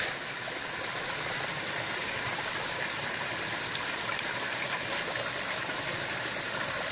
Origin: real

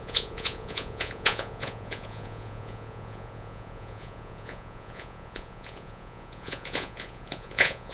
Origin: fake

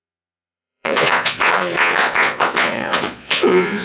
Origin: fake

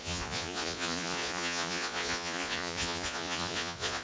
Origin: fake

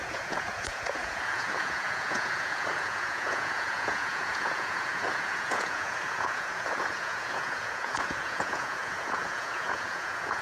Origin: fake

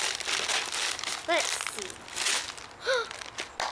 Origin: real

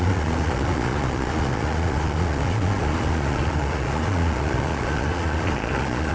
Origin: fake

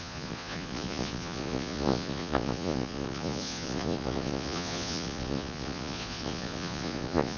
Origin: fake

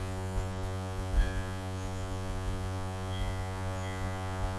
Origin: fake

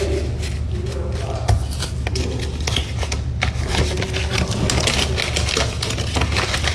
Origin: real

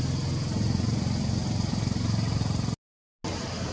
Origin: real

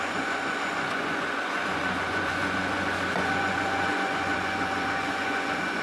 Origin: fake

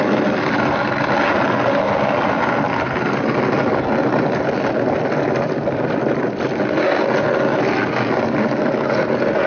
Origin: real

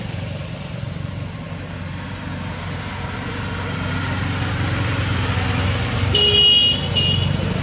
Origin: real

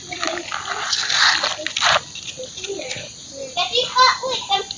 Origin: real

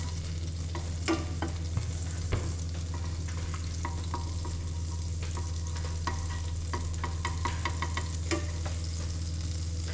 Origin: real